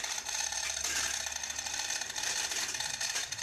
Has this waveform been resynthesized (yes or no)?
no